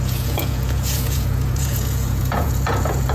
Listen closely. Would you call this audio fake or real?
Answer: fake